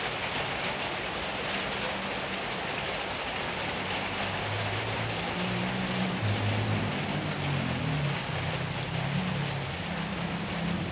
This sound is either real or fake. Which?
real